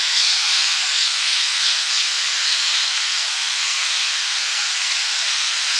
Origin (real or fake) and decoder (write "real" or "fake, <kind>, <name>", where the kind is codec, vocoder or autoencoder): fake, codec, SNAC